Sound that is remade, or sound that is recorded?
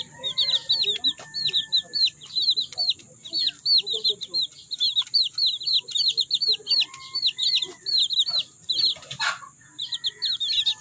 recorded